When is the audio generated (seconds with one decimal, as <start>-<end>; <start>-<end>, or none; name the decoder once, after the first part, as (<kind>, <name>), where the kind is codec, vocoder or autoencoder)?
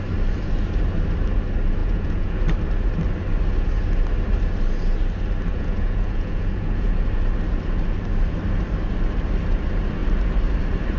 1.8-2.4 (vocoder, Vocos); 5.5-6.9